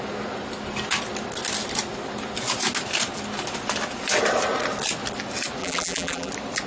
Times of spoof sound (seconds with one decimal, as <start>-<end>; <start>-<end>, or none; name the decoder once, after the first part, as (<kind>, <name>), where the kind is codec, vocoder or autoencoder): 5.6-6.3 (vocoder, BigVGAN v2)